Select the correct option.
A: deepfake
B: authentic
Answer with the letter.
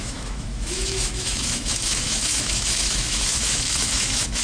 A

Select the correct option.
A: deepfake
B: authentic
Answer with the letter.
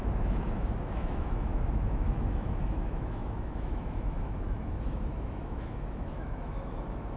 A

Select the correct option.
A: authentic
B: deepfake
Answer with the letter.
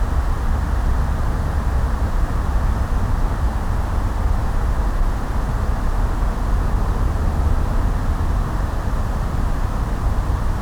A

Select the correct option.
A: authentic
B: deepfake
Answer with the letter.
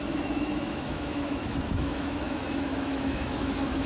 B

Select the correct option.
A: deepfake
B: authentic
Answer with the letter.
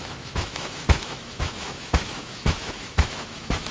A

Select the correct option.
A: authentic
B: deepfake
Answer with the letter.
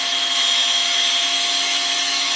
B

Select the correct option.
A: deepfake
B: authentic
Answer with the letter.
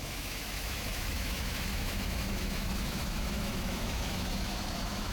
A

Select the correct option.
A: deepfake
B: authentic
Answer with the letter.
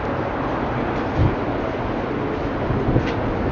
B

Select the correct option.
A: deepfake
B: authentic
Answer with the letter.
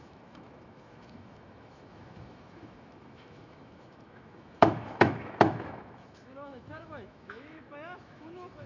A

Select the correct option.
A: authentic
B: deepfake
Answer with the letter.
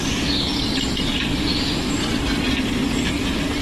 A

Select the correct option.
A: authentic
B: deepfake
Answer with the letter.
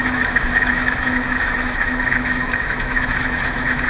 B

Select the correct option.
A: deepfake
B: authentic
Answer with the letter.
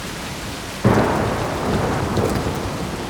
B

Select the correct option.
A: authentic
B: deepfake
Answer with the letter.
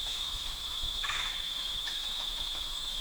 B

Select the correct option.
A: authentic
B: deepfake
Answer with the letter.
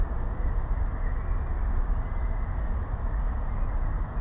A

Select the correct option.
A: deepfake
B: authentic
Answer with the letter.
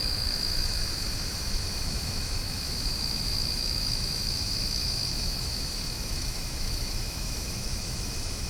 A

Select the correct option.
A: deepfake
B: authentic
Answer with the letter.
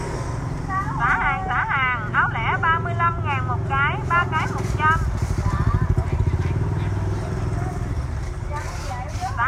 B